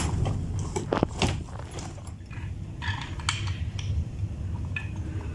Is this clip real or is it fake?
real